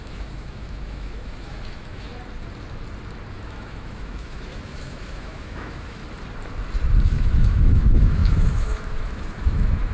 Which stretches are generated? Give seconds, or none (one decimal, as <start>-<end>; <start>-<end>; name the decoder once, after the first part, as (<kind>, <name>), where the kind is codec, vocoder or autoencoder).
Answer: 0.0-2.1 (autoencoder, DAC-VAE); 3.3-6.0; 7.0-9.9